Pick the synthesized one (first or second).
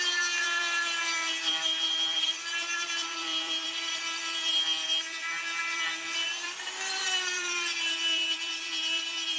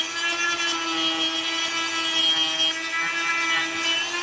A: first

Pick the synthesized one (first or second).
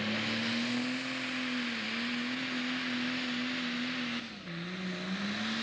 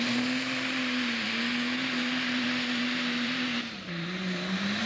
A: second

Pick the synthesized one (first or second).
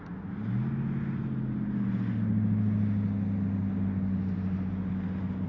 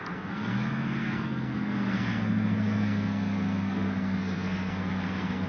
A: second